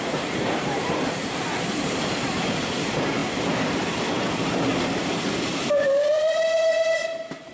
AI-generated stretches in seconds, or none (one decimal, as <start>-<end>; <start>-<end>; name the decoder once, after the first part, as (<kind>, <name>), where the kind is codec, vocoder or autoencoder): 0.0-3.2 (vocoder, BigVGAN v2); 4.3-4.7; 6.1-7.5